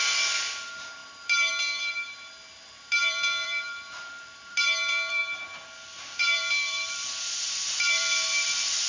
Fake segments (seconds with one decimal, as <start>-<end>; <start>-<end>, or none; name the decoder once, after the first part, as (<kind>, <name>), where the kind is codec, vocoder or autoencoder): 0.0-5.2 (vocoder, BigVGAN v2); 6.2-8.9